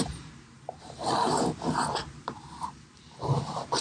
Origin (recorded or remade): remade